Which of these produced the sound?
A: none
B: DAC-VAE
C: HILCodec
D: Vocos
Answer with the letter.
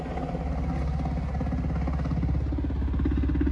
A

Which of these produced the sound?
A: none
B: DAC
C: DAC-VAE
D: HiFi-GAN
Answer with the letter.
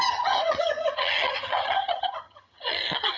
D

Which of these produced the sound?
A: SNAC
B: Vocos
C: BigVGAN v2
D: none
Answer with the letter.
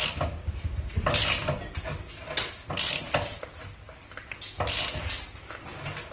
D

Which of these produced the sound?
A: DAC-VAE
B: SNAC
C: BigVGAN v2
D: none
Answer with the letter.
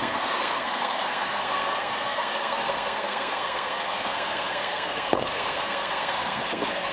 B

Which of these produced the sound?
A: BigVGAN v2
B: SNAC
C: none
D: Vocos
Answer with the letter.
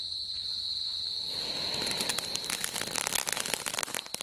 C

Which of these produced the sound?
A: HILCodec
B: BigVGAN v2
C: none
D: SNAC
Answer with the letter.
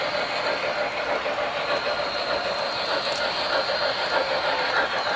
B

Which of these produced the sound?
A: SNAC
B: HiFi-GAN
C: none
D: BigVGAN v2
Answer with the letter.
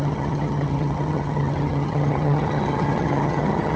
B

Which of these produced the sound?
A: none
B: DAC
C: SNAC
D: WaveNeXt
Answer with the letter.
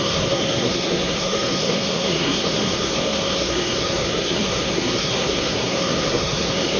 C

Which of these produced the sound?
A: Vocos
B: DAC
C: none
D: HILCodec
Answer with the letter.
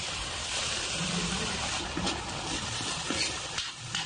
C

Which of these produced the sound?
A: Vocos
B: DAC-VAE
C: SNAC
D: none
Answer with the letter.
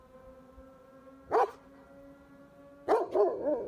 D